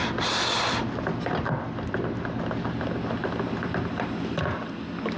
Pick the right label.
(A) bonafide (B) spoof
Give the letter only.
A